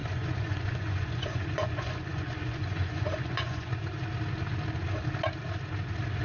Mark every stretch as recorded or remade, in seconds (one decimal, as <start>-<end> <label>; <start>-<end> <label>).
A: 0.0-3.7 remade; 3.7-6.2 recorded